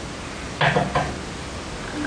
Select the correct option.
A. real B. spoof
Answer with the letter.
A